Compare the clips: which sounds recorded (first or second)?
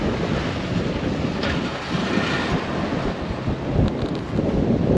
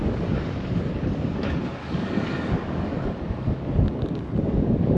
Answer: first